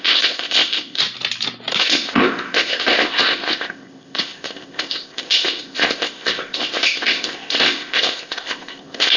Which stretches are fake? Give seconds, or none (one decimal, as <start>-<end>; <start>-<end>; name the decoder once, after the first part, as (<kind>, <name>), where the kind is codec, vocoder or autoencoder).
0.0-1.0 (codec, ZipCodec); 1.8-9.2

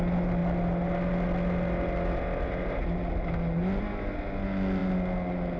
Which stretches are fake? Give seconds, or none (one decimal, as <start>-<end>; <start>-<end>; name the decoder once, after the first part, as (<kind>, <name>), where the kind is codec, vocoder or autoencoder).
none

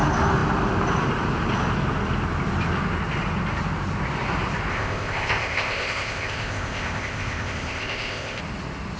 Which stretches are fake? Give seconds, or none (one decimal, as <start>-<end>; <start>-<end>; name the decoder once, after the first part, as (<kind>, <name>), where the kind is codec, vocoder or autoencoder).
4.7-8.4 (codec, ZipCodec)

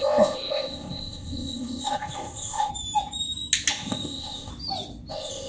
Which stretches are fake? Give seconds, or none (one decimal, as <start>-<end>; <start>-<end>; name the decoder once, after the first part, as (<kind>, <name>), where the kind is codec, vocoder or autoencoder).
0.0-2.7 (codec, ZipCodec); 3.7-4.5; 5.1-5.5

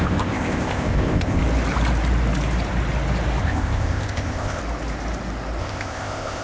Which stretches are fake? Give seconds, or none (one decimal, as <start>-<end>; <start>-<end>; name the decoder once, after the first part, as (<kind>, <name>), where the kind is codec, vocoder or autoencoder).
0.0-1.4 (codec, ZipCodec); 3.4-4.6; 5.6-6.4

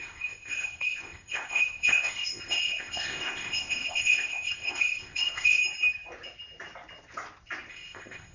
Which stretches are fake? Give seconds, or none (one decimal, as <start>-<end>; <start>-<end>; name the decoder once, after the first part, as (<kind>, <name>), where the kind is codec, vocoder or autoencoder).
0.0-5.6 (codec, ZipCodec); 7.7-8.3

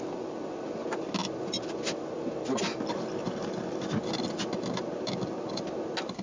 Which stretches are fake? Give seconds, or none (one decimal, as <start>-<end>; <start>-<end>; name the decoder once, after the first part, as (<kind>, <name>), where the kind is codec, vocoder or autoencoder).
none